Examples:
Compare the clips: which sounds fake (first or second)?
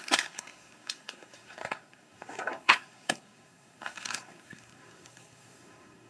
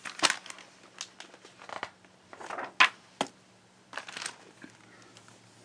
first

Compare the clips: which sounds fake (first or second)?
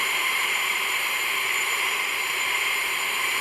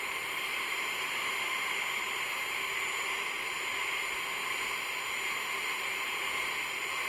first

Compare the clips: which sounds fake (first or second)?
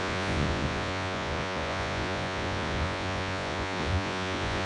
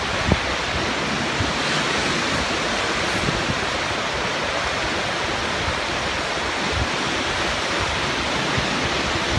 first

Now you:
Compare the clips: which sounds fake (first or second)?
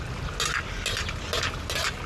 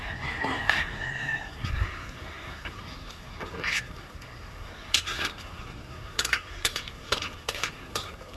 second